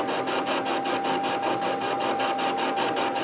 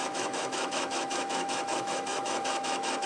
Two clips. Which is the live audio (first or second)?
first